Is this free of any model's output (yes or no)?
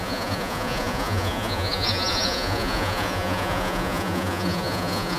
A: no